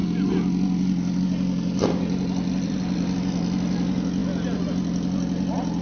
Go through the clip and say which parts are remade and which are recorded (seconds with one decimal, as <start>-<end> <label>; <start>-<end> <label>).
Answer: 0.0-5.8 recorded